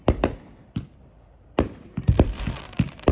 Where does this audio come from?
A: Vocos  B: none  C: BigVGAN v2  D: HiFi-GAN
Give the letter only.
C